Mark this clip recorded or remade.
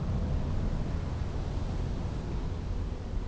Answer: recorded